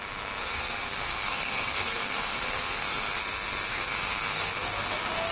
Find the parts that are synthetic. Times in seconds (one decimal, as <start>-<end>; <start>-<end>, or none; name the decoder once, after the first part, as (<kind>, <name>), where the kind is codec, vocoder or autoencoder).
0.4-3.2 (codec, SNAC); 3.7-4.5